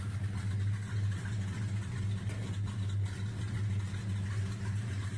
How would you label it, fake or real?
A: real